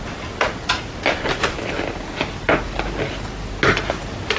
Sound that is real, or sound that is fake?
real